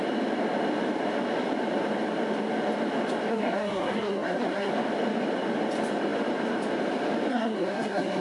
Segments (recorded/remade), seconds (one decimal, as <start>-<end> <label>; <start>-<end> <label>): 0.0-3.3 recorded; 3.3-4.7 remade; 4.7-7.3 recorded; 7.3-8.2 remade